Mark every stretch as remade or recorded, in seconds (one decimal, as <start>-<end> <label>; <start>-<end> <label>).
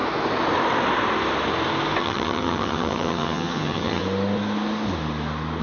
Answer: 0.0-2.0 recorded; 2.0-4.0 remade; 4.0-5.6 recorded